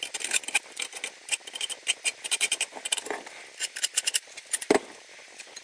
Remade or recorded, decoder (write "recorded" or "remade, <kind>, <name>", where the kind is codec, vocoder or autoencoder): recorded